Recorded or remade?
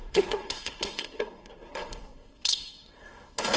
remade